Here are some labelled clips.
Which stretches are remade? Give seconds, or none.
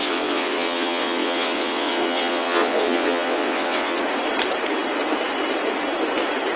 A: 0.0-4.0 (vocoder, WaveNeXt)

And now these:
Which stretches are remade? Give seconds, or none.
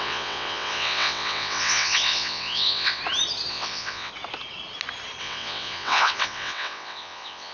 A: 0.0-3.0 (vocoder, WaveNeXt); 3.5-4.1; 5.2-7.5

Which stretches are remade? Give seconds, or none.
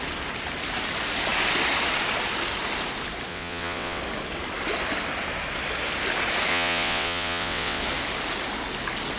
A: 3.3-4.0 (vocoder, WaveNeXt); 6.5-7.8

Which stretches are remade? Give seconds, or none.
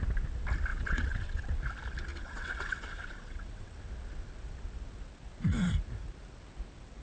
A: 0.7-1.6 (vocoder, WaveNeXt); 2.1-3.8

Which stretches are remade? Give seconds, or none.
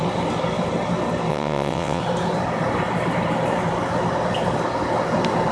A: 1.3-2.0 (vocoder, WaveNeXt)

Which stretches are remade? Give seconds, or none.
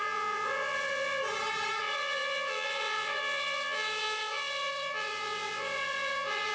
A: 0.0-1.2 (vocoder, WaveNeXt); 1.8-6.5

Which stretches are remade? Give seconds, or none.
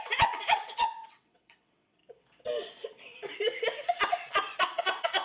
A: 0.0-2.0 (vocoder, WaveNeXt); 4.6-5.2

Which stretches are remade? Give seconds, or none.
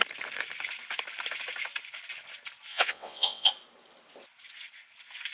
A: 2.7-3.5 (vocoder, WaveNeXt)